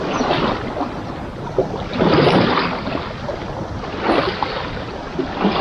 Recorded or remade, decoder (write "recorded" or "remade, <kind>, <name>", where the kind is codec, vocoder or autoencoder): recorded